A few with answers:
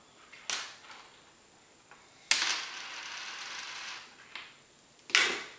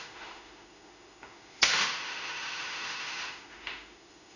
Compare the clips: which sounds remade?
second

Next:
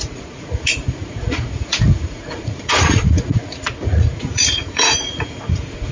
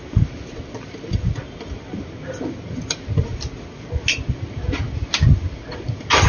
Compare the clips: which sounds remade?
first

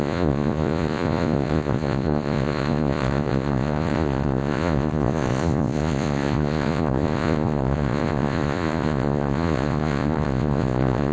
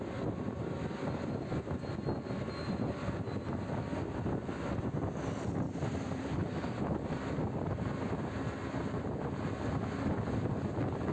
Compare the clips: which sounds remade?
first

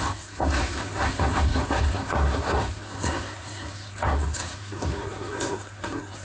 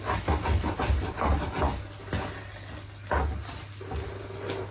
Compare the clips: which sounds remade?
first